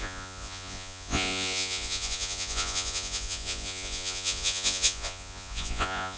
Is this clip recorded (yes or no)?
no